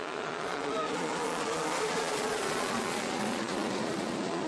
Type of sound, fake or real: fake